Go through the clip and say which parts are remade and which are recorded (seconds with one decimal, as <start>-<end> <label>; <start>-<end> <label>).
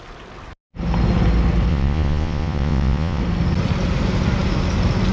0.0-1.7 recorded; 1.7-3.2 remade; 3.2-5.1 recorded